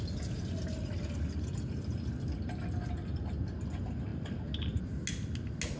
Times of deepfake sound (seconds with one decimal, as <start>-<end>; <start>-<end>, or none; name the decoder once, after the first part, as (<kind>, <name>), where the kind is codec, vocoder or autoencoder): none